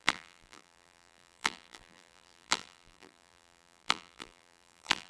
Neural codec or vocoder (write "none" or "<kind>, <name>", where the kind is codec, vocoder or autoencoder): vocoder, BigVGAN v2